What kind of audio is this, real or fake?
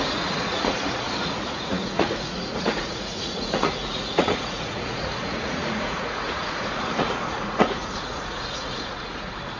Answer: fake